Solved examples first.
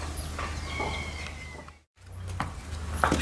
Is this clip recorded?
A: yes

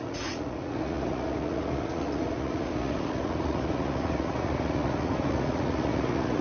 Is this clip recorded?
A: no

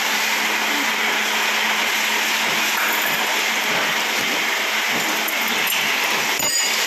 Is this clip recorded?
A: yes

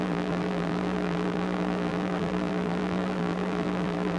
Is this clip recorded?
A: no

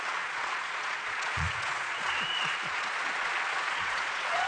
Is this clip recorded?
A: no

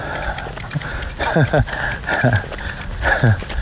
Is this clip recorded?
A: yes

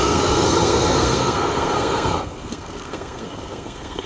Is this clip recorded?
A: no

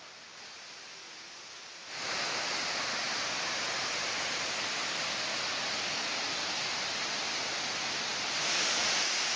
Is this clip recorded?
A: yes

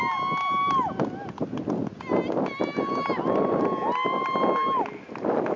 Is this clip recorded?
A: yes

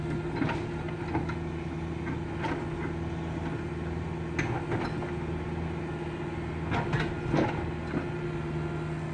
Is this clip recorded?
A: yes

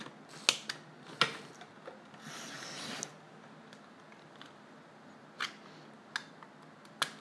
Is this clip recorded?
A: yes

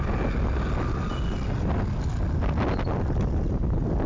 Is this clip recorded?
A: yes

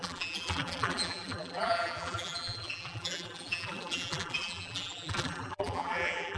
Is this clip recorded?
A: no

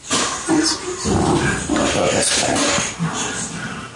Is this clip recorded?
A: yes